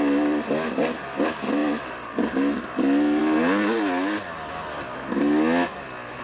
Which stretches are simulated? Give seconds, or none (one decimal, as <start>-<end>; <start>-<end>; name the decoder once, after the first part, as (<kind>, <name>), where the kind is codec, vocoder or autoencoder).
none